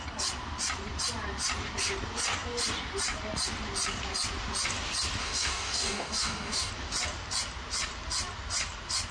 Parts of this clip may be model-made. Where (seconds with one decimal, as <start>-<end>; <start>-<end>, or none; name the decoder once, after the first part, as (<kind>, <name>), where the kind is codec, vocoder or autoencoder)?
5.2-6.7 (codec, DAC)